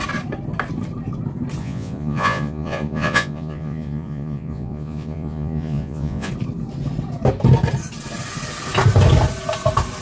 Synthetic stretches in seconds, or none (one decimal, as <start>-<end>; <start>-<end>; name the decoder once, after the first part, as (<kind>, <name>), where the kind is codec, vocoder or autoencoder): 1.6-6.3 (vocoder, Vocos)